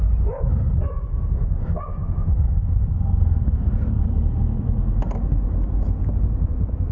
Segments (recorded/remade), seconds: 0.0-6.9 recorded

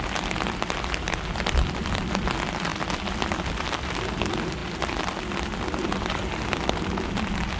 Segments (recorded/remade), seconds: 0.0-7.6 recorded